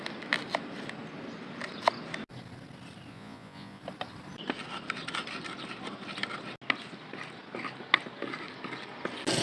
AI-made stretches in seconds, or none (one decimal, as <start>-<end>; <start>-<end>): 3.1-3.8